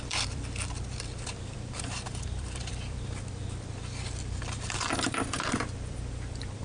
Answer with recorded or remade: remade